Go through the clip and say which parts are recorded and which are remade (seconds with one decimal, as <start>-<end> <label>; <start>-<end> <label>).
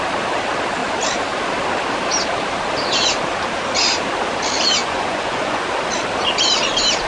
0.0-4.8 recorded; 4.8-5.7 remade; 5.7-7.1 recorded